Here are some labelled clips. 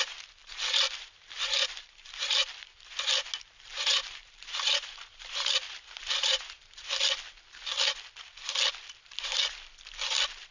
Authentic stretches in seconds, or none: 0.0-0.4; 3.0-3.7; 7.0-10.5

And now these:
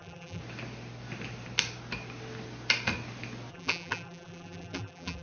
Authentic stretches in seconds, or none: 0.4-3.5